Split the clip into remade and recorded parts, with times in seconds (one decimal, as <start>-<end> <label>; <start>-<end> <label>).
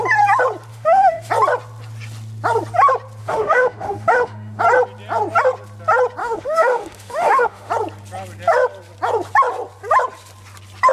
0.0-0.7 recorded; 0.7-1.3 remade; 1.3-3.2 recorded; 3.2-4.6 remade; 4.6-6.2 recorded; 6.2-7.7 remade; 7.7-10.9 recorded